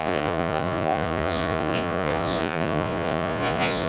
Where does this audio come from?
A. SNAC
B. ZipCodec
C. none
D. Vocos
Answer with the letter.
D